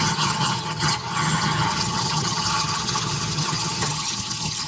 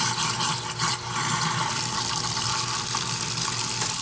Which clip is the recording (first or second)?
second